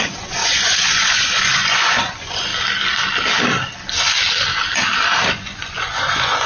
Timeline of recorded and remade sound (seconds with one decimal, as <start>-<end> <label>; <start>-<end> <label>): 0.0-2.5 remade; 2.5-5.3 recorded; 5.3-6.5 remade